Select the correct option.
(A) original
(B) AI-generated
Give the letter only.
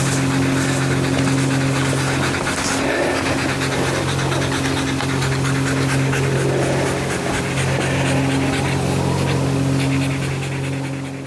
A